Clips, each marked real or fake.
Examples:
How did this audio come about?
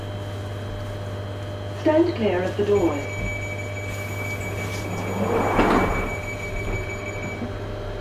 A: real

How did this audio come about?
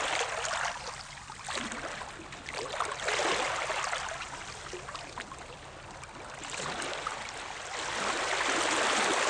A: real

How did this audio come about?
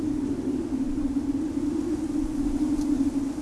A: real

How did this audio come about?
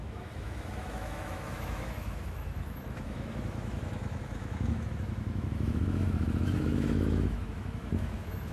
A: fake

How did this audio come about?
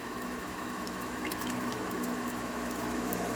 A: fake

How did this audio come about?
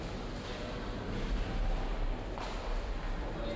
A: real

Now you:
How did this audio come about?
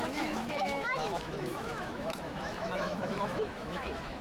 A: fake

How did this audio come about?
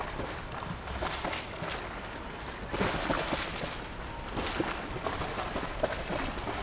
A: real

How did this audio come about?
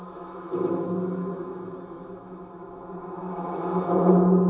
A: fake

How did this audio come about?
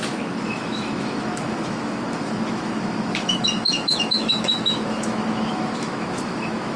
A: fake